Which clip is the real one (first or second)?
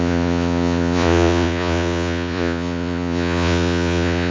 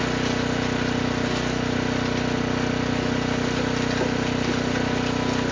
second